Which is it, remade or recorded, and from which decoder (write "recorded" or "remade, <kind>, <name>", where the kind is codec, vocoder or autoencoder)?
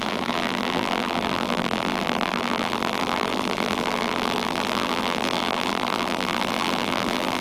remade, vocoder, BigVGAN v2